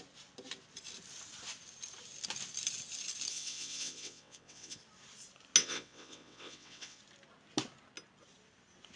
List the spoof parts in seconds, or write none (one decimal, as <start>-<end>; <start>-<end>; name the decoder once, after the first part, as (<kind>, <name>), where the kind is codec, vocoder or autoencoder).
3.3-4.8 (vocoder, WaveNeXt); 5.6-7.0